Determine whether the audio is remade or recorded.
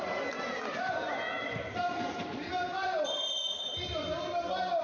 recorded